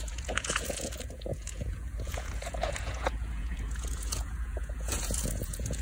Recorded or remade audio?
remade